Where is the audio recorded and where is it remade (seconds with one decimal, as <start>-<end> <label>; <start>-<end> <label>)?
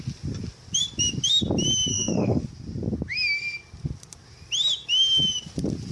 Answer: 0.0-1.9 recorded; 1.9-2.4 remade; 2.4-5.9 recorded